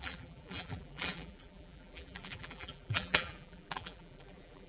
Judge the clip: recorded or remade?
remade